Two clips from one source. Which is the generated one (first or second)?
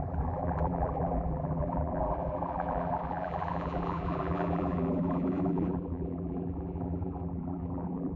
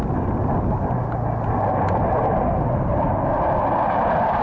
first